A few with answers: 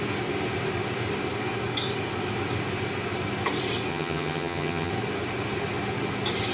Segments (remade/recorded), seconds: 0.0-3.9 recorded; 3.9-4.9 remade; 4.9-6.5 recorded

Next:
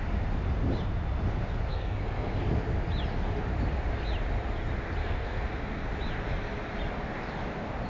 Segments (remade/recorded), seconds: 0.0-1.7 recorded; 1.7-2.4 remade; 2.4-5.0 recorded; 5.0-5.9 remade; 5.9-7.9 recorded

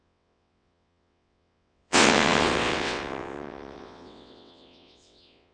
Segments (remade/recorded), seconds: 0.0-5.5 remade